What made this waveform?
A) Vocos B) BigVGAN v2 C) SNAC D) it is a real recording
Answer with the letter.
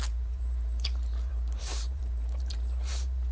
B